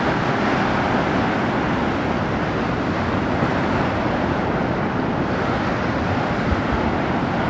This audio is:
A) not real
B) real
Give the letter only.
B